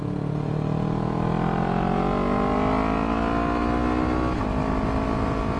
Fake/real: real